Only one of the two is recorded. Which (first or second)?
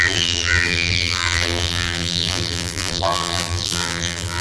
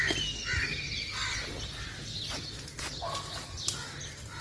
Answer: second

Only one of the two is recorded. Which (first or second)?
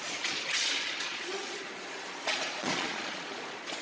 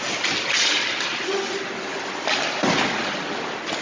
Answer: second